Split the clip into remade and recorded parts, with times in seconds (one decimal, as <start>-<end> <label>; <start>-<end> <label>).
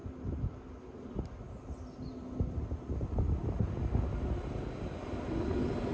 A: 0.0-5.9 recorded